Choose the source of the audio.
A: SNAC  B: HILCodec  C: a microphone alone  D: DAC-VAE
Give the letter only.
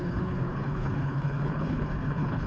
B